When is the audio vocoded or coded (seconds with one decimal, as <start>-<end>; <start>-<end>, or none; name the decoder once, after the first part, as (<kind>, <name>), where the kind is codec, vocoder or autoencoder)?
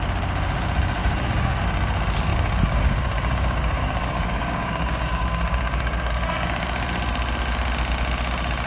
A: 1.0-1.6 (codec, DAC); 2.3-6.1